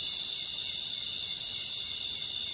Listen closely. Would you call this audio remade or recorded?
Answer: recorded